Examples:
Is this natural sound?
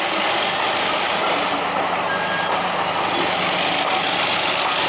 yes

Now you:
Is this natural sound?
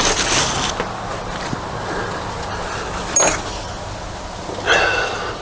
yes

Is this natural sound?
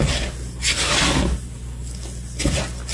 yes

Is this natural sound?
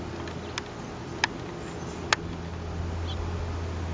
yes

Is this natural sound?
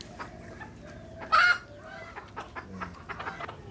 yes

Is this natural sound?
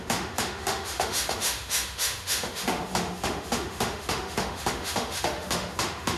no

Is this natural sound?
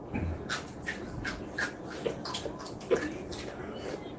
yes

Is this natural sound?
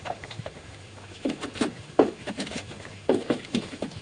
no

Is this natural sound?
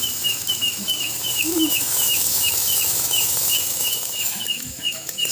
no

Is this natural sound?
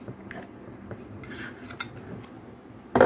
yes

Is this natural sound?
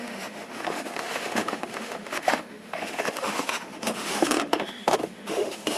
no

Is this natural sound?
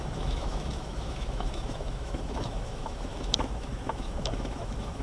no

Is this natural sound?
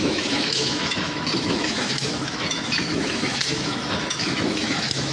no